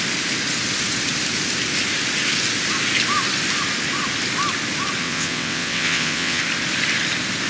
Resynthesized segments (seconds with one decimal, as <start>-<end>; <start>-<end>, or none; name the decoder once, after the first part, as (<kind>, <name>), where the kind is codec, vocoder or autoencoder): 5.0-6.4 (vocoder, WaveNeXt)